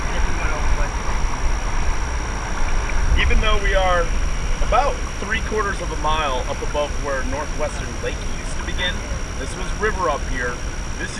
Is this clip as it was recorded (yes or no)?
yes